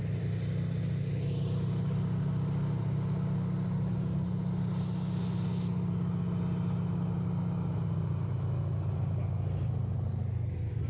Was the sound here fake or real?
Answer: real